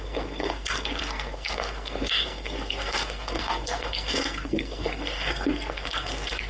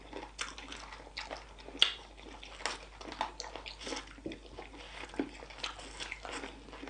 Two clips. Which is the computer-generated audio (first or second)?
first